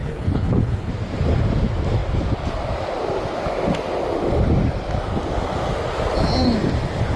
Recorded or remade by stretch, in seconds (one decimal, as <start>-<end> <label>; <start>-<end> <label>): 0.0-0.9 remade; 0.9-7.2 recorded